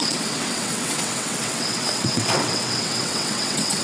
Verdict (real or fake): fake